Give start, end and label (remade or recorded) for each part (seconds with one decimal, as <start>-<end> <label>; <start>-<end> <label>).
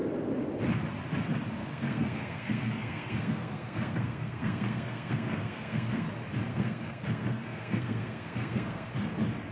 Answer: 0.0-1.6 recorded; 1.6-6.1 remade; 6.1-6.5 recorded; 6.5-8.9 remade; 8.9-9.5 recorded